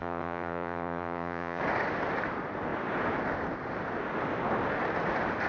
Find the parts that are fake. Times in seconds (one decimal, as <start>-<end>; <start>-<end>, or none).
0.0-1.6